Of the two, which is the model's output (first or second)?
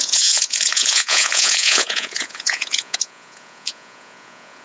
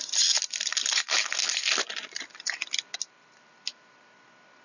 first